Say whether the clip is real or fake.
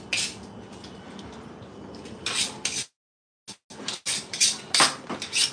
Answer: real